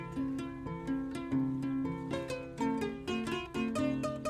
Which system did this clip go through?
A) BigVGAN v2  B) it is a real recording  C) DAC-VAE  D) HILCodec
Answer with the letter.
B